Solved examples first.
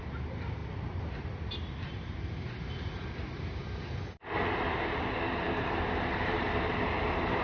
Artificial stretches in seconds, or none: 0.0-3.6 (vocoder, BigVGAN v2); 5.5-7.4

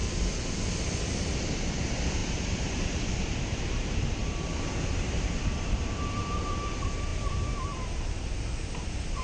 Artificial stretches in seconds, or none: 1.6-9.2 (vocoder, BigVGAN v2)

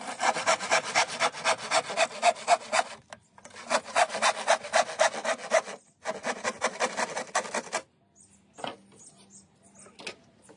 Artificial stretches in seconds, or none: none

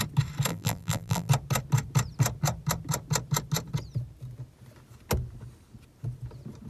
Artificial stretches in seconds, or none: 0.5-1.3 (vocoder, BigVGAN v2)

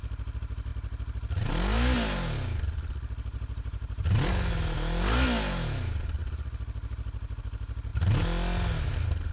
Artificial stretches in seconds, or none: 3.3-4.3 (vocoder, BigVGAN v2)

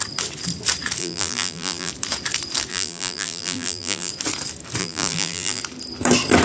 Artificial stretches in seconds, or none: 1.0-1.9 (vocoder, BigVGAN v2); 2.7-4.1; 4.8-5.6